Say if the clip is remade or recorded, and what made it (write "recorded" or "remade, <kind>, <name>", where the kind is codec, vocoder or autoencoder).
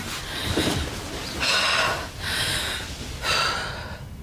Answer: recorded